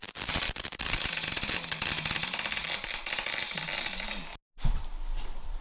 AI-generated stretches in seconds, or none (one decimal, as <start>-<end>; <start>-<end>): none